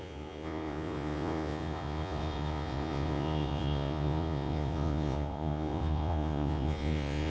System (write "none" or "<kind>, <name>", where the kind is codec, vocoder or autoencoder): vocoder, Vocos